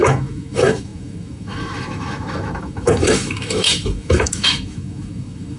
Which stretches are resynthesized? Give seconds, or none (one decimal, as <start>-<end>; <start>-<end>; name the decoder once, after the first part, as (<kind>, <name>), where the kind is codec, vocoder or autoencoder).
0.0-5.6 (autoencoder, DAC-VAE)